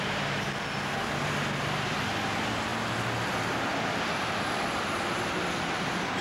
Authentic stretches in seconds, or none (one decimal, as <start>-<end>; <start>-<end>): 0.0-6.2